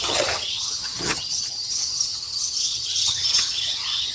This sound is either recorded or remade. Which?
remade